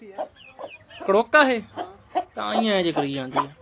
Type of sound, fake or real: real